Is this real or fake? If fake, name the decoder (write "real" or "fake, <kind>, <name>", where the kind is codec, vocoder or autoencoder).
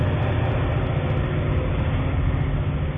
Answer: real